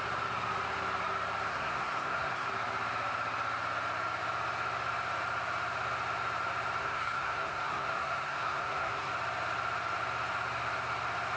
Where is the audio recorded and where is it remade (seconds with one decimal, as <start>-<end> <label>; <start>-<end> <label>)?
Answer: 0.0-1.5 recorded; 1.5-2.5 remade; 2.5-6.8 recorded; 6.8-9.1 remade; 9.1-11.4 recorded